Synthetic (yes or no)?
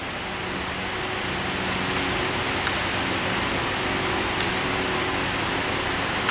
no